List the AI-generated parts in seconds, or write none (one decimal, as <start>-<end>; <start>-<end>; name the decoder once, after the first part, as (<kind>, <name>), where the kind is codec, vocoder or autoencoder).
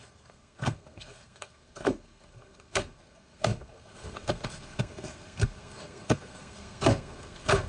0.0-7.7 (codec, SNAC)